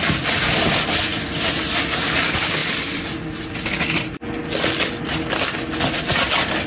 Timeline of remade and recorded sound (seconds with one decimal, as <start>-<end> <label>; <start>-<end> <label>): 0.0-6.7 recorded